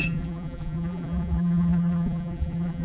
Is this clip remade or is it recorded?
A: remade